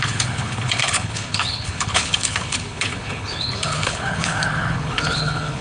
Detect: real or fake fake